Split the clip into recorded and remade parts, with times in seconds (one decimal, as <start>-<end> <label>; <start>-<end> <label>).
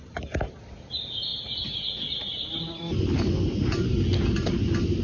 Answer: 0.0-5.0 recorded